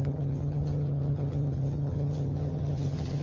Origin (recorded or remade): remade